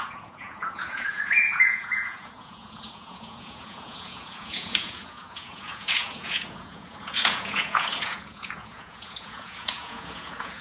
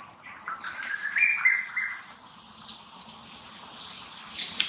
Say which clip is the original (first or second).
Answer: second